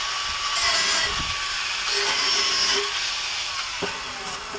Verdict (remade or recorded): recorded